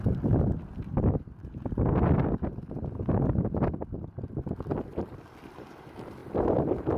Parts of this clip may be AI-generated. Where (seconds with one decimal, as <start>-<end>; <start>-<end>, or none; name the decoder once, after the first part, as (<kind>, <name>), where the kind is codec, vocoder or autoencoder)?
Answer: none